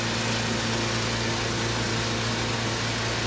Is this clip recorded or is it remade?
recorded